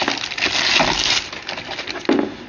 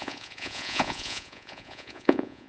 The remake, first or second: second